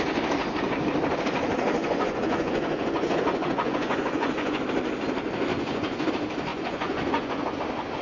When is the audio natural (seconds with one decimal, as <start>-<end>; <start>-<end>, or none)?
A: 0.0-1.8; 4.6-5.5; 6.1-6.5; 7.5-8.0